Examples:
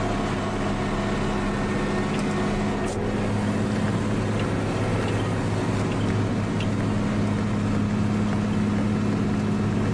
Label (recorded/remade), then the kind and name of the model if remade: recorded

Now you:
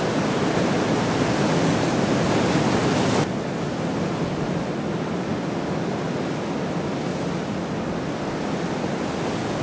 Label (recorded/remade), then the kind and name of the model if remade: recorded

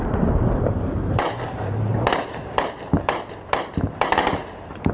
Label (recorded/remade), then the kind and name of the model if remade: remade, vocoder, BigVGAN v2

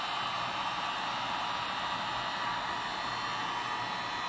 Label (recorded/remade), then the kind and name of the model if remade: recorded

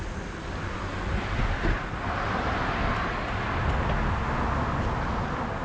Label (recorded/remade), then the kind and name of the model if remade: recorded